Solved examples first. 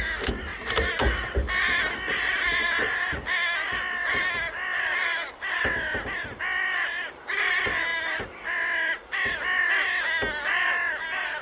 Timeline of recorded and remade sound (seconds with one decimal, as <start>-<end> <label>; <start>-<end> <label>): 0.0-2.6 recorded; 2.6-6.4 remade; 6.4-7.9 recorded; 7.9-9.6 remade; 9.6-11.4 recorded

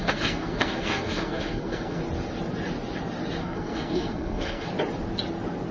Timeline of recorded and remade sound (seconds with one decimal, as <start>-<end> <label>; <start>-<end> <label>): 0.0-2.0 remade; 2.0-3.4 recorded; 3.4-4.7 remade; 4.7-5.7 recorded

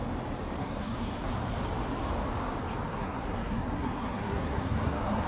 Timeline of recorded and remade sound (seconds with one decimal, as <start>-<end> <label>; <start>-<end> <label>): 0.0-0.6 recorded; 0.6-1.3 remade; 1.3-2.9 recorded; 2.9-5.3 remade